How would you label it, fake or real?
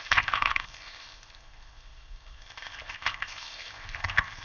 fake